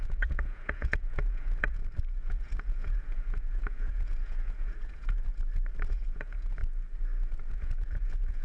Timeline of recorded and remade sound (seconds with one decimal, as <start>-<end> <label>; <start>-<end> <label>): 0.0-1.8 remade; 1.8-2.3 recorded; 2.3-5.3 remade; 5.3-5.9 recorded; 5.9-6.6 remade; 6.6-7.5 recorded; 7.5-8.4 remade